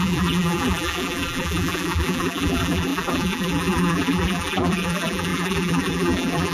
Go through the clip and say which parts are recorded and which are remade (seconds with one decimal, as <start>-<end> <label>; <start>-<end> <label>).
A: 0.0-6.5 remade